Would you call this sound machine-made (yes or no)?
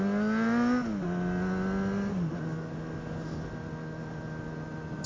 no